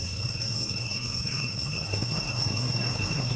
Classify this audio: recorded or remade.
remade